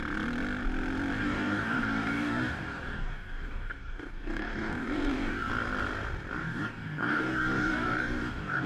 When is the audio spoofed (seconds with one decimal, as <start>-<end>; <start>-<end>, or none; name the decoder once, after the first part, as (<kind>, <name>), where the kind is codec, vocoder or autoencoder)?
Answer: 1.2-5.5 (codec, DAC); 6.4-8.7